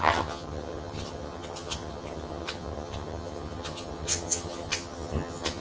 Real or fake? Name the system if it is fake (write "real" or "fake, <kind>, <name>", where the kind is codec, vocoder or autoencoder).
fake, vocoder, HiFi-GAN